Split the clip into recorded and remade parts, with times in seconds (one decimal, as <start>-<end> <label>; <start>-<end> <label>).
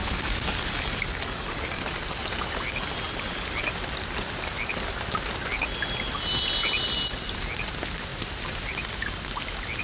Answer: 0.0-1.8 remade; 1.8-9.8 recorded